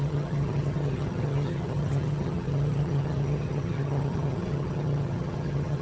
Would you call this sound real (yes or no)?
no